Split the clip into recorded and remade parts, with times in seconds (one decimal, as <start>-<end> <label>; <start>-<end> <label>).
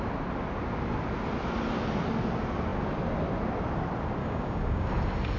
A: 0.0-4.2 recorded; 4.2-4.9 remade; 4.9-5.4 recorded